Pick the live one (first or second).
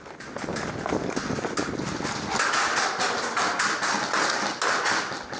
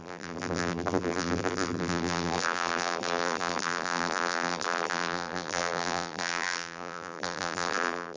first